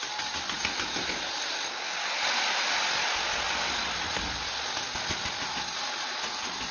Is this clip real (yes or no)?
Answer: yes